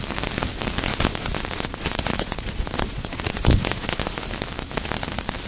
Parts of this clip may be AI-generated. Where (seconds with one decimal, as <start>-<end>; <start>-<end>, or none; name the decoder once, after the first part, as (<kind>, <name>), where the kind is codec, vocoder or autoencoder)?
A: 0.9-4.2 (vocoder, Vocos)